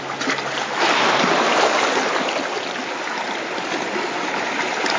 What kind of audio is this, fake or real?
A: real